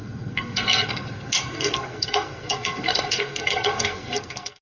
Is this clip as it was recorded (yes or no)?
no